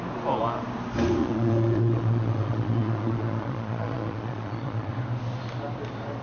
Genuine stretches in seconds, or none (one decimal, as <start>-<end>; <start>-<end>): 0.0-1.2; 4.9-6.2